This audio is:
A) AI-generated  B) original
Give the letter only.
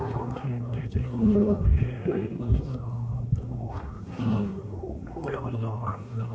A